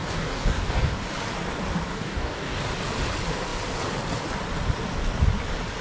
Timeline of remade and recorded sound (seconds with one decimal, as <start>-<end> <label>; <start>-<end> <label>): 0.0-1.0 remade; 1.0-1.9 recorded; 1.9-2.6 remade; 2.6-5.8 recorded